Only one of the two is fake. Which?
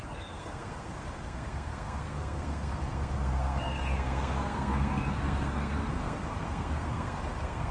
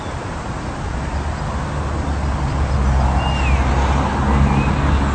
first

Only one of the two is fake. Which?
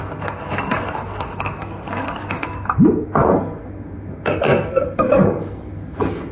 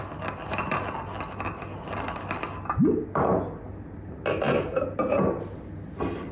first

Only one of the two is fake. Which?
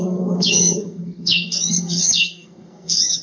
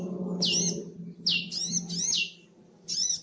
first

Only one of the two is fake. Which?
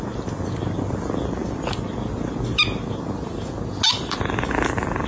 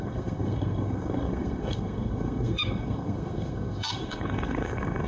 second